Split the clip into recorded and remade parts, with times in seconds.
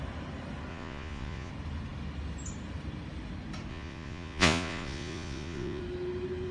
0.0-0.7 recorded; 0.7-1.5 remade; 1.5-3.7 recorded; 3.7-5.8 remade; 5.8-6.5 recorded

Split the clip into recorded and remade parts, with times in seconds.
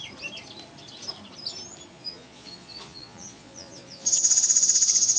0.0-1.9 recorded; 1.9-5.2 remade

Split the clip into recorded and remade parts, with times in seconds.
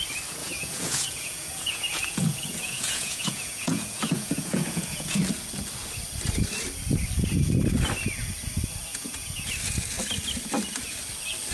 0.0-0.4 recorded; 0.4-5.2 remade; 5.2-8.9 recorded; 8.9-9.5 remade; 9.5-11.5 recorded